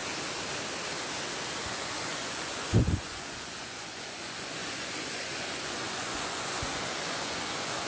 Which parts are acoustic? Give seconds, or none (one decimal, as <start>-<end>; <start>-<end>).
0.0-1.6